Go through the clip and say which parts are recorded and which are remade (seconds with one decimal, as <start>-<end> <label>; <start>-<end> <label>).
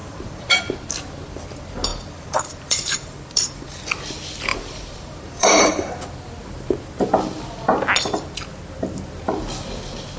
0.0-0.6 remade; 0.6-1.9 recorded; 1.9-3.9 remade; 3.9-4.5 recorded; 4.5-5.7 remade; 5.7-10.2 recorded